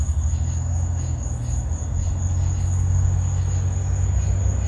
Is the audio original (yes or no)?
yes